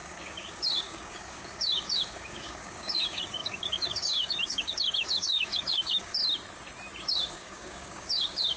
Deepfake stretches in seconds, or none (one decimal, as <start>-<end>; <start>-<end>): 0.0-6.2; 7.0-8.6